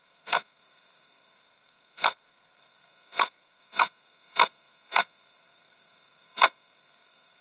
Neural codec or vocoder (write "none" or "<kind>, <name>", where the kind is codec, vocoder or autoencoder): codec, SNAC